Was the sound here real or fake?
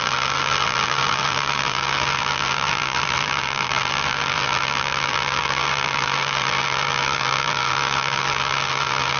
fake